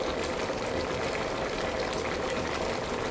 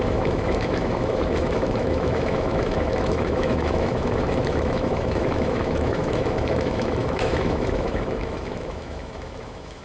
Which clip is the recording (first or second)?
first